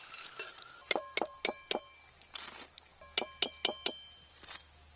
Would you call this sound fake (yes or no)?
no